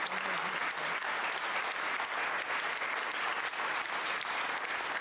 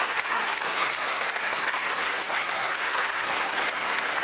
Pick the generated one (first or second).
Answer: second